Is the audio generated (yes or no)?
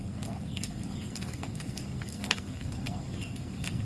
yes